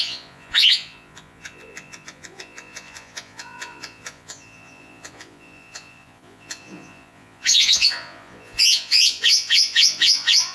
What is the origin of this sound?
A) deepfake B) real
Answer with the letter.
A